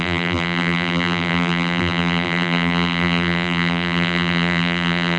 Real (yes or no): no